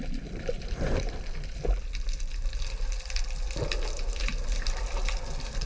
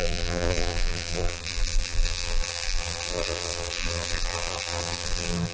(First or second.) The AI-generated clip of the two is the second